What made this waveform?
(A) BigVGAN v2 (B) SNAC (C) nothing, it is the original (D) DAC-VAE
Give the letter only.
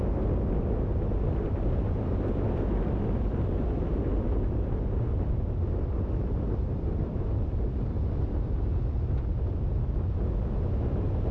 C